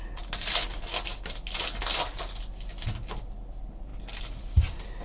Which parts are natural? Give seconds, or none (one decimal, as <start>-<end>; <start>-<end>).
0.0-5.0

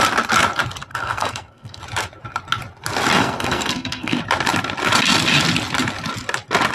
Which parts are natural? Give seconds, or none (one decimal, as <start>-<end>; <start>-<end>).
0.0-0.9; 1.8-3.2; 4.2-6.7

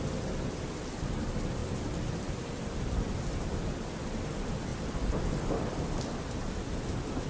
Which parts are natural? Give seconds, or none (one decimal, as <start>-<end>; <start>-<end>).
0.0-1.6; 3.1-4.7; 5.8-7.3

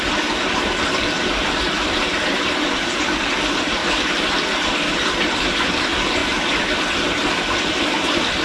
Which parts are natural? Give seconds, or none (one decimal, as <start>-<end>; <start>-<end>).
0.0-8.4